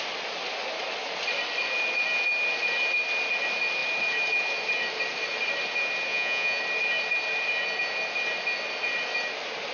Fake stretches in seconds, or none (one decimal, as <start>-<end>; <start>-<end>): 6.1-6.6